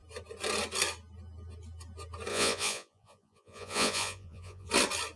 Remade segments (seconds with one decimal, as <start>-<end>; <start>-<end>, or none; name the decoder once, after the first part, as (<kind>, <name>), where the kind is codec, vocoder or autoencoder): 2.3-4.7 (vocoder, Vocos)